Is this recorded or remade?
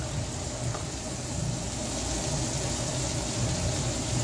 recorded